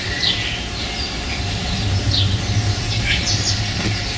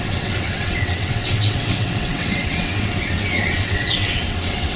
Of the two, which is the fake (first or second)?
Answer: second